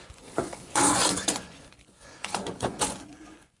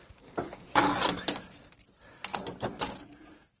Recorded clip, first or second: second